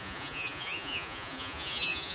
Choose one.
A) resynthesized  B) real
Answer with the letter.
A